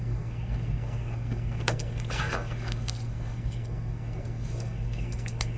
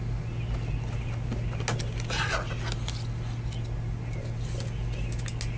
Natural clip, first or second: second